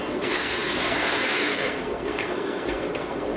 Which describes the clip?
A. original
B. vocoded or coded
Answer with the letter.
B